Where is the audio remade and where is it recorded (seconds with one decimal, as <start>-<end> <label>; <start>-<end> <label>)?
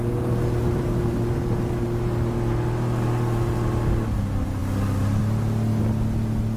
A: 0.0-0.6 recorded; 0.6-1.4 remade; 1.4-6.6 recorded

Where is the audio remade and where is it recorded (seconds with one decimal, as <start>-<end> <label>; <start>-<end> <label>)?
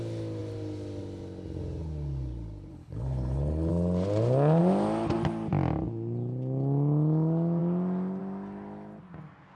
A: 0.0-2.7 recorded; 2.7-3.7 remade; 3.7-9.6 recorded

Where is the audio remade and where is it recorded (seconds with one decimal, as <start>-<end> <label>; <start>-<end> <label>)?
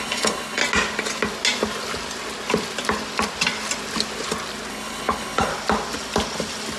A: 0.0-0.6 remade; 0.6-4.7 recorded; 4.7-5.5 remade; 5.5-6.8 recorded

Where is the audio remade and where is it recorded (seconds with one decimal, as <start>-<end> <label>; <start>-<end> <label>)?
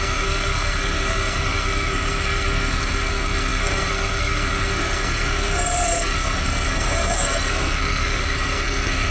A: 0.0-9.1 remade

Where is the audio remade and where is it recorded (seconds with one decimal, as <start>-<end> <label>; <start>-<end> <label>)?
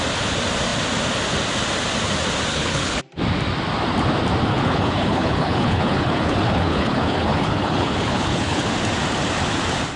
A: 0.0-2.5 recorded; 2.5-3.0 remade; 3.0-4.5 recorded; 4.5-8.7 remade; 8.7-10.0 recorded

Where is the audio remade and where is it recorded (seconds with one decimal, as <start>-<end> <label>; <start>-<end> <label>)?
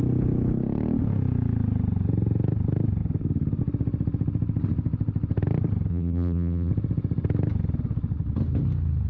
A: 0.0-5.9 recorded; 5.9-6.7 remade; 6.7-9.1 recorded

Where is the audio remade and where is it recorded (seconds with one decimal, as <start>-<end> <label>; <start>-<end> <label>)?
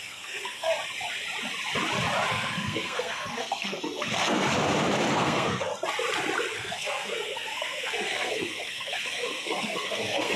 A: 0.0-0.7 remade; 0.7-2.3 recorded; 2.3-4.5 remade; 4.5-5.1 recorded; 5.1-5.7 remade; 5.7-6.5 recorded; 6.5-10.4 remade